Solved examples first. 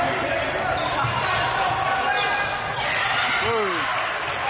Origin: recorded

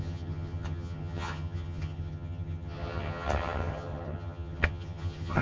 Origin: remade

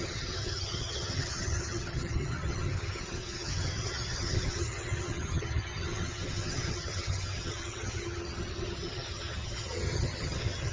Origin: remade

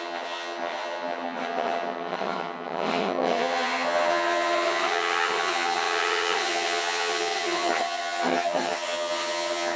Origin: remade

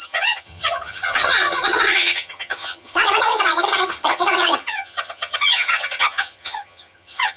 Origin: remade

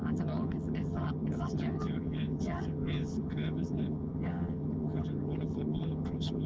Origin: remade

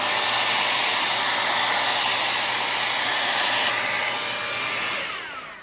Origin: recorded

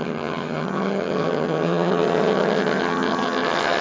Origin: remade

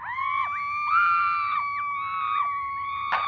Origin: recorded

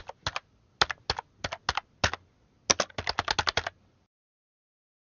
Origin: recorded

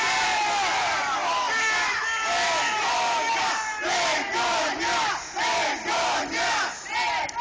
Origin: recorded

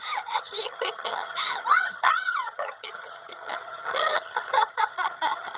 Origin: remade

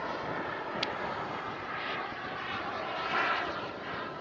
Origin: recorded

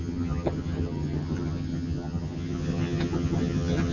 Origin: remade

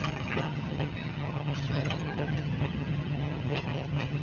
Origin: remade